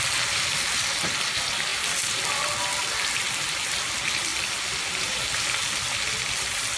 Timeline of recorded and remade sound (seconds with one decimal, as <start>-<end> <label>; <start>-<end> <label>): 0.0-6.8 recorded